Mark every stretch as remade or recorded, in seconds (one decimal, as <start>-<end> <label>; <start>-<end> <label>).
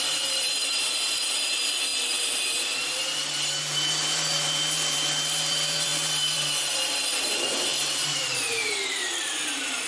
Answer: 0.0-9.9 remade